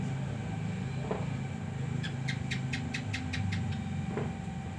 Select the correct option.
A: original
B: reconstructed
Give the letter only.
A